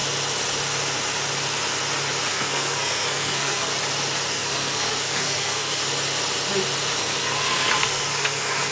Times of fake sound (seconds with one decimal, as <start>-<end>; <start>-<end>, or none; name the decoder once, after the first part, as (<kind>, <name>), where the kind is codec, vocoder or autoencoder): 2.3-3.7 (codec, SNAC); 4.3-5.8; 7.0-8.7